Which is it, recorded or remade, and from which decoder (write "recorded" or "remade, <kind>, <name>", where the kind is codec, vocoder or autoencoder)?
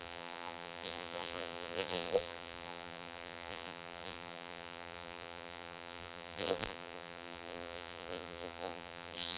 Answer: remade, vocoder, BigVGAN v2